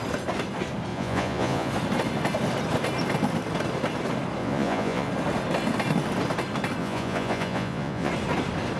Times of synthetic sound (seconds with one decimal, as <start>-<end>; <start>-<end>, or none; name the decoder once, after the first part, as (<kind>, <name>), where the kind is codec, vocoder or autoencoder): 0.9-1.7 (vocoder, Vocos); 4.4-5.1; 6.8-8.1